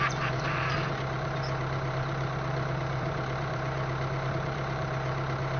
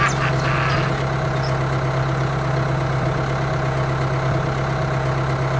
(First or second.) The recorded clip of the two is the second